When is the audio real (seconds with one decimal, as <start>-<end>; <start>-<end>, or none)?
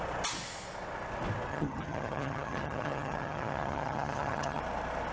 0.0-1.5; 4.6-5.1